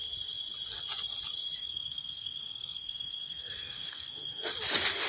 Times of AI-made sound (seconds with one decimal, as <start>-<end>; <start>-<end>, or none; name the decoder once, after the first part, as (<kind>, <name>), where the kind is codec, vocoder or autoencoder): 1.6-4.5 (codec, SNAC)